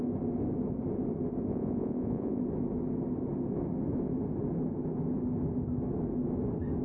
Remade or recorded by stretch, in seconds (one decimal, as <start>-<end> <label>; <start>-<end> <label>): 0.0-1.5 recorded; 1.5-2.4 remade; 2.4-6.8 recorded